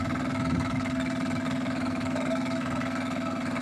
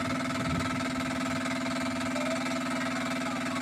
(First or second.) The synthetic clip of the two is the first